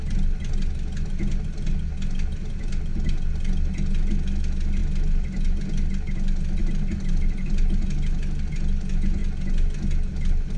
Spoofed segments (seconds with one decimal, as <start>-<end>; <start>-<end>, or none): none

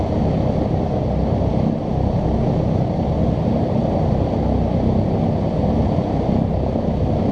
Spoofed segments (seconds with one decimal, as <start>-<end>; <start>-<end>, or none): none

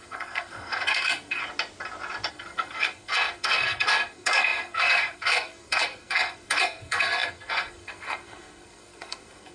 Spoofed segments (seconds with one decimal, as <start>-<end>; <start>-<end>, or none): 0.0-1.4; 2.3-9.5

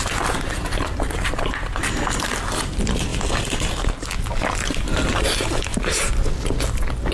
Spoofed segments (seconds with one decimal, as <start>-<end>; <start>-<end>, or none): none

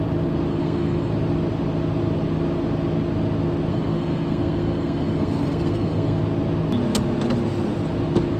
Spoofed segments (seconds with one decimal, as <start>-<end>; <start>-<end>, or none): 0.5-1.1; 3.7-6.2